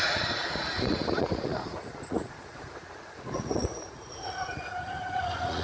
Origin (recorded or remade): remade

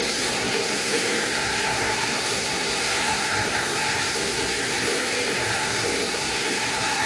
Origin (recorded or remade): remade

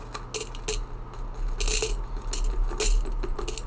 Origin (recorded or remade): recorded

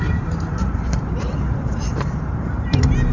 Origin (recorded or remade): remade